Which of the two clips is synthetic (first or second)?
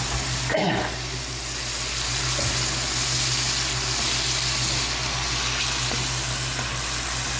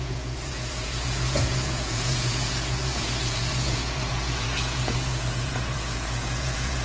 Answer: second